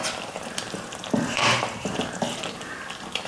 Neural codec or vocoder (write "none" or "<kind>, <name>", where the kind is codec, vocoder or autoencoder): vocoder, BigVGAN v2